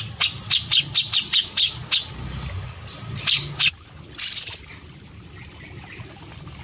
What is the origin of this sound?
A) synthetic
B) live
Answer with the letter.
A